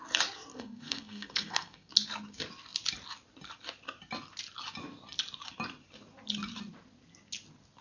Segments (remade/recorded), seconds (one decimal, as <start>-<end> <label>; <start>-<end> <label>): 0.0-0.5 recorded; 0.5-1.9 remade; 1.9-7.8 recorded